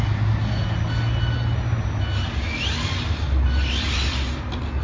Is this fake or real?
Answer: real